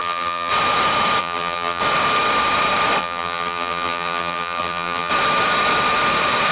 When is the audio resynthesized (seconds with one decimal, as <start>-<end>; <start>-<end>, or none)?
0.0-0.5; 1.2-1.8; 3.0-5.1

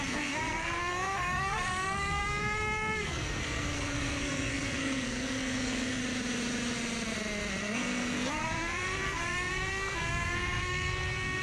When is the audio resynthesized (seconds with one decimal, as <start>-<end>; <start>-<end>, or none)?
0.0-6.0; 7.6-11.4

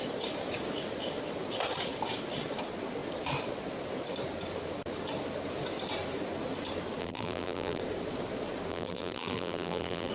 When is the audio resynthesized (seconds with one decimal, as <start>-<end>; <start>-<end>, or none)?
7.0-7.8; 8.7-10.1

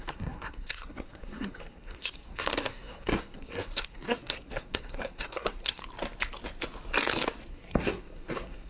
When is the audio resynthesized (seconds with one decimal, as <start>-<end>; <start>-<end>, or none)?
0.0-5.8; 7.5-8.7

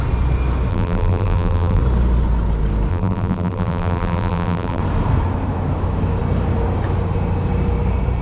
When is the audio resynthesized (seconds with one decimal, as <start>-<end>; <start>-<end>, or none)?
0.7-1.8; 2.9-4.8

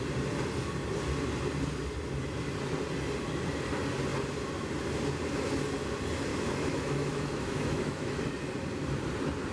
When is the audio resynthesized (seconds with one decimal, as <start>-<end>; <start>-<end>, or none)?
6.3-8.2